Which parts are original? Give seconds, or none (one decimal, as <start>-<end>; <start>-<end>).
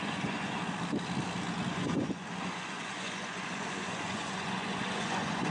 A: 0.6-1.7